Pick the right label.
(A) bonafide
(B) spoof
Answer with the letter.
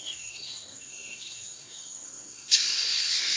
B